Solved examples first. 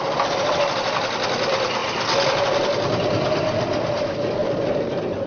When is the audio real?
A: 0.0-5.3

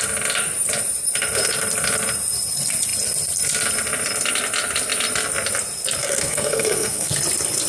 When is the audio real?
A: 0.0-6.0; 7.1-7.7

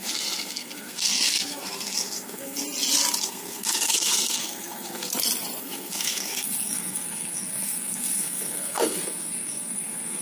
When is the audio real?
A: 2.6-3.2; 5.1-5.6

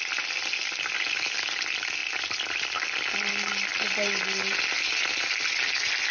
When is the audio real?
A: 0.0-6.1

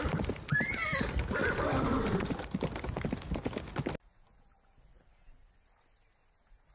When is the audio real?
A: 0.0-6.7

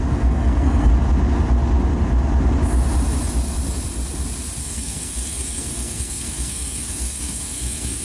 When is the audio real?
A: 0.9-4.6

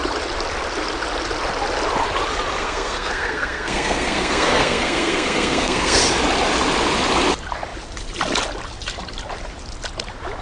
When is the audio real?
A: 0.0-2.6; 6.0-10.4

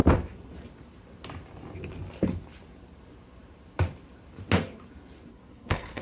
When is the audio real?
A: 0.0-5.3